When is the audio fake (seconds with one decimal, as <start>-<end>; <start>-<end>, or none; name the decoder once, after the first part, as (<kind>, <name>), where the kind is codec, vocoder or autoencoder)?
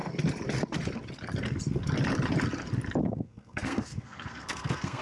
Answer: 3.0-5.0 (codec, SNAC)